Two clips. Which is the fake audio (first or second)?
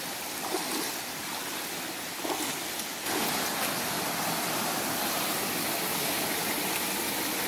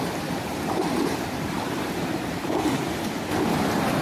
second